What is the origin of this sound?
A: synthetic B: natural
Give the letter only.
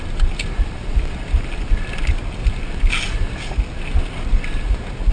B